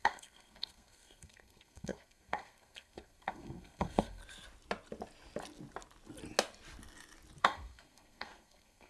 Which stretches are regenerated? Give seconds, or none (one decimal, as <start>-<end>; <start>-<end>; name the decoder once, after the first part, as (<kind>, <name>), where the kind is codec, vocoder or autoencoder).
0.0-4.2 (codec, SNAC); 7.4-8.9